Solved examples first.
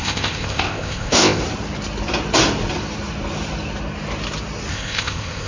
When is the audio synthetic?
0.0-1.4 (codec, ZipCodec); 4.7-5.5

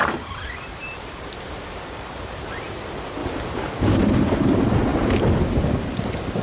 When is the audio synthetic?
0.0-2.5 (vocoder, BigVGAN v2); 3.2-4.0